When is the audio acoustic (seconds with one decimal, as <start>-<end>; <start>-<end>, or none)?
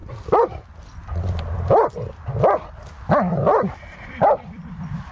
0.0-3.5